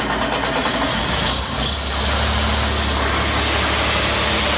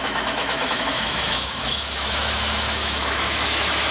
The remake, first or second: second